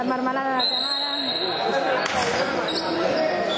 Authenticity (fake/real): real